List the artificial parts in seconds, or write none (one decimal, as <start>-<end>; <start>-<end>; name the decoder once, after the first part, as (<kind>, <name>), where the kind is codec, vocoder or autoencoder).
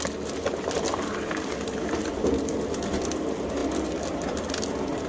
3.6-4.5 (vocoder, BigVGAN v2)